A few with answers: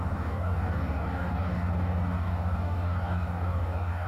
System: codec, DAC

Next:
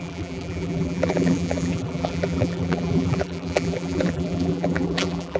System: vocoder, BigVGAN v2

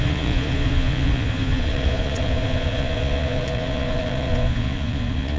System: vocoder, Vocos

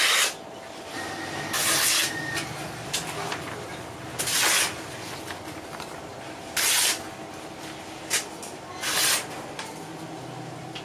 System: none